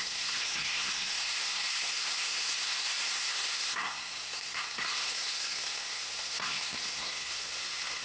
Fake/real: fake